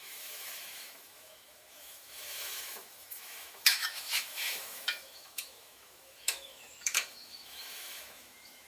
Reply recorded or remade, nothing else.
remade